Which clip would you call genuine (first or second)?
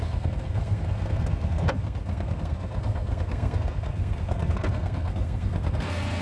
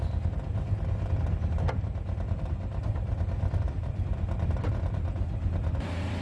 second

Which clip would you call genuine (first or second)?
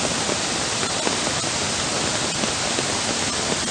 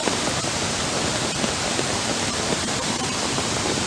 first